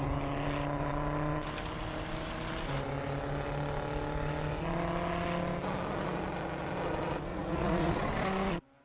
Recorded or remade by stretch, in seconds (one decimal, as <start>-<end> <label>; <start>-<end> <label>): 0.0-7.3 recorded; 7.3-7.9 remade; 7.9-8.8 recorded